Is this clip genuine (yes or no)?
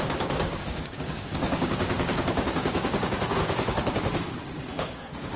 no